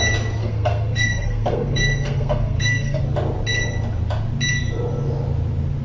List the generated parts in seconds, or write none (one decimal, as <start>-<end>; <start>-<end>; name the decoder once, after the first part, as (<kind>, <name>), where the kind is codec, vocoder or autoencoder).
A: 0.4-3.0 (codec, SNAC)